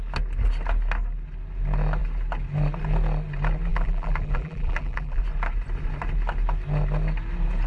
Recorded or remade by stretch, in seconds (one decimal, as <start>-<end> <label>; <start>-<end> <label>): 0.0-3.7 recorded; 3.7-5.2 remade; 5.2-7.7 recorded